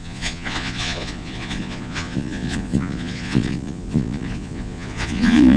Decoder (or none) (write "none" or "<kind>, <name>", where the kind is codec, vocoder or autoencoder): vocoder, Vocos